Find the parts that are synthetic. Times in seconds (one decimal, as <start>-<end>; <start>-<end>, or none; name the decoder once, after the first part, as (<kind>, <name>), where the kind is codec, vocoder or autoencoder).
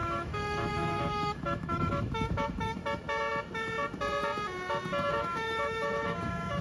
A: 0.0-2.8 (autoencoder, DAC-VAE); 5.1-6.6